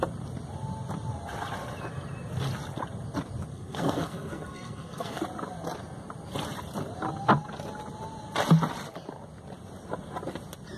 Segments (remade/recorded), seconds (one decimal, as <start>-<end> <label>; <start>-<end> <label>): 0.0-3.5 recorded; 3.5-5.2 remade; 5.2-10.8 recorded